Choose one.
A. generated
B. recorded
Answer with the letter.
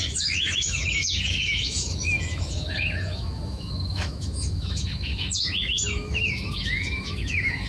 A